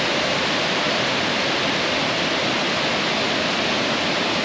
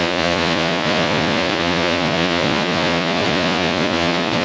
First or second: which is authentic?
first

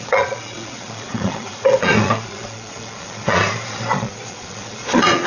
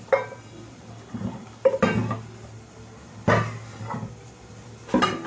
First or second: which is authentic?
second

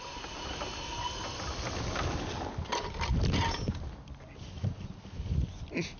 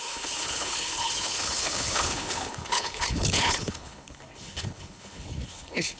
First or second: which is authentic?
first